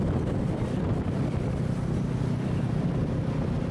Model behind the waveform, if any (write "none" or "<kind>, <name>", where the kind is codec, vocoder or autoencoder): vocoder, BigVGAN v2